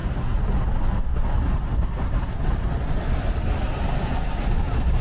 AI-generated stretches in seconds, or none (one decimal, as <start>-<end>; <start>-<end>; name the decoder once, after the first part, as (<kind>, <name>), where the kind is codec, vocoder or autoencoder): none